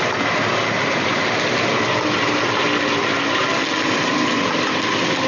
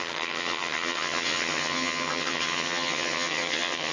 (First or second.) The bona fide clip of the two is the first